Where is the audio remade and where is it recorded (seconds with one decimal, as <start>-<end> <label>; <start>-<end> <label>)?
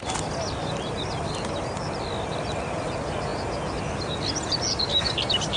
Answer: 0.0-5.6 recorded